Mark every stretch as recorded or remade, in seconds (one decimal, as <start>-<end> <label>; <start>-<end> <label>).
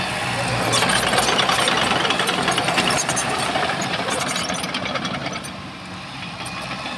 0.0-2.6 recorded; 2.6-4.2 remade; 4.2-5.2 recorded; 5.2-5.8 remade; 5.8-7.0 recorded